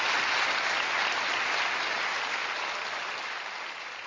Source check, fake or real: real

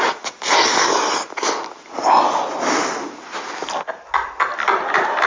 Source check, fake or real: real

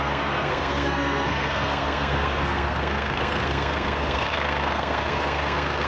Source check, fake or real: fake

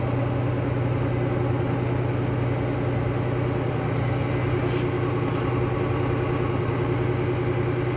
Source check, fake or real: real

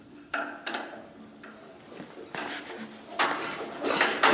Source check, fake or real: real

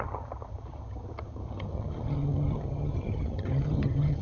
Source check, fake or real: fake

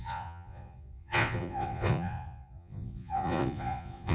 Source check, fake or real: fake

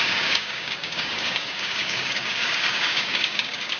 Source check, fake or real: fake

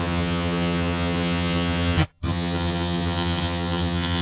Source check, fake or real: fake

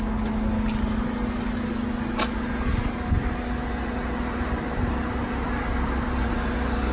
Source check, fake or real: real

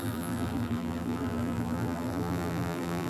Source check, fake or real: fake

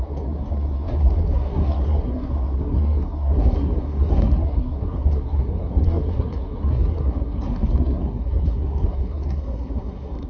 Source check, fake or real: fake